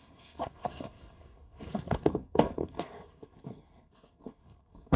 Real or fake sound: fake